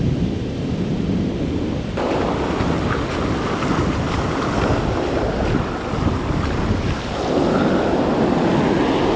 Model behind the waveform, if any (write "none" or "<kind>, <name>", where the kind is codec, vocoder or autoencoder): none